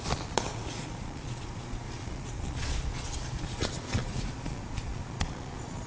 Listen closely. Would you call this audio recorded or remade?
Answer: remade